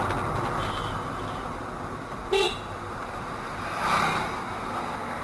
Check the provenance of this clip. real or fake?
real